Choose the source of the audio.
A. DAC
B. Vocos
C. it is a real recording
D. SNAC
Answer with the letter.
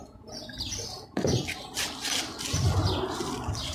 C